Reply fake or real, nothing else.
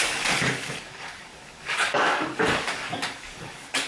fake